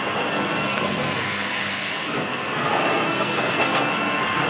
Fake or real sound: fake